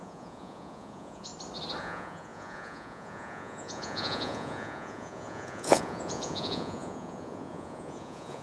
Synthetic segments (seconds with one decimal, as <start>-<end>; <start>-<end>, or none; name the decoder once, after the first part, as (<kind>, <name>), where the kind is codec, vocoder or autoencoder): 0.0-1.3 (vocoder, Vocos); 1.8-8.4